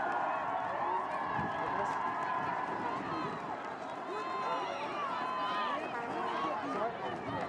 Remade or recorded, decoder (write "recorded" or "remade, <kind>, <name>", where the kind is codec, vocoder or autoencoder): recorded